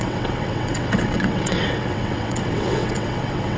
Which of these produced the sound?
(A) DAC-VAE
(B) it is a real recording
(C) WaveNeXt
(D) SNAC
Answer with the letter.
C